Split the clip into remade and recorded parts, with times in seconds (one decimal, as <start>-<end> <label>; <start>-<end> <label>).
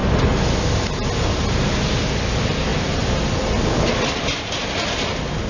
0.0-5.5 recorded